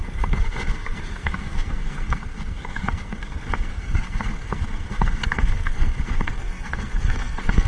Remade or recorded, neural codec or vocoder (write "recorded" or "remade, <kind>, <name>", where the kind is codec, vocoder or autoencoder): remade, codec, SNAC